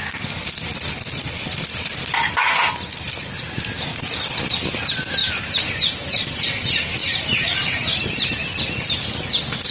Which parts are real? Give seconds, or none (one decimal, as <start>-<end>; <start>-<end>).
0.0-5.2; 6.4-7.0; 8.6-9.7